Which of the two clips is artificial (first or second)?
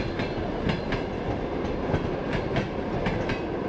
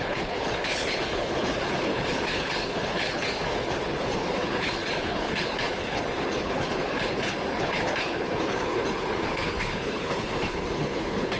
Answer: second